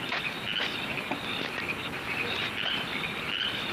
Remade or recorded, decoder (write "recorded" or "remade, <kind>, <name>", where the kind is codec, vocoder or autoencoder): remade, vocoder, BigVGAN v2